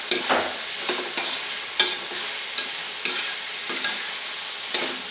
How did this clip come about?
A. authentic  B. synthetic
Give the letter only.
A